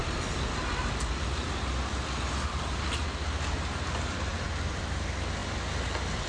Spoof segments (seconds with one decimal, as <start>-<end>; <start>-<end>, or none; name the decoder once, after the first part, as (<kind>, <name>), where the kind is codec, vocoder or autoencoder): none